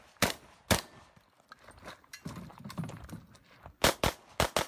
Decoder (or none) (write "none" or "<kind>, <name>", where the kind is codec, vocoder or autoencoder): none